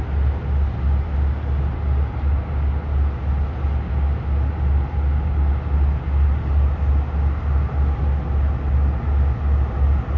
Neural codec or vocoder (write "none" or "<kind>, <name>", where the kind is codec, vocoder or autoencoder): none